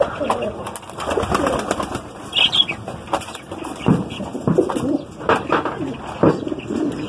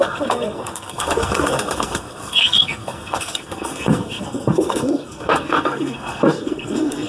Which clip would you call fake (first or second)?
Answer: second